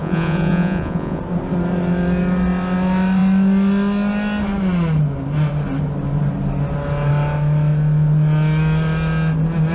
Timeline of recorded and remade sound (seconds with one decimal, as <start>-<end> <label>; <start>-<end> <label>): 0.0-1.2 remade; 1.2-9.7 recorded